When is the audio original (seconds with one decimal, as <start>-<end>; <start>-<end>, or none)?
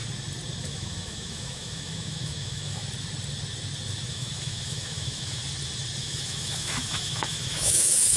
0.0-0.6; 2.8-4.1; 5.4-6.0